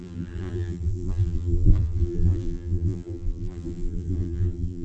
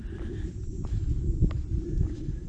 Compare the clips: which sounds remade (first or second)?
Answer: first